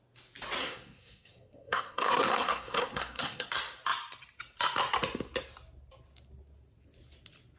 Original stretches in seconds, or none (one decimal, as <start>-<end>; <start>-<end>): 0.0-0.6; 3.5-7.6